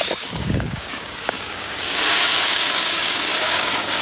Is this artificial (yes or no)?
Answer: yes